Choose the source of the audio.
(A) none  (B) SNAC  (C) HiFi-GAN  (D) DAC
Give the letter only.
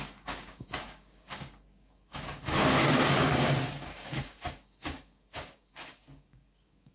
D